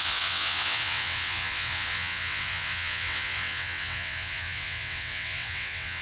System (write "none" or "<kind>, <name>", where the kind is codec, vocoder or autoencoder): vocoder, WaveNeXt